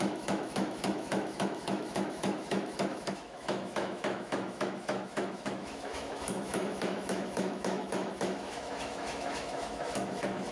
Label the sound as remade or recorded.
remade